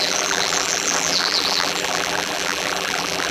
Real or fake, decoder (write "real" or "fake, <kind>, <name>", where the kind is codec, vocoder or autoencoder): fake, vocoder, BigVGAN v2